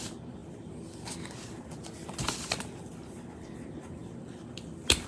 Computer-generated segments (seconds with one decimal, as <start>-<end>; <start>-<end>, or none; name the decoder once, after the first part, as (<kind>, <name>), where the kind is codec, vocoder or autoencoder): none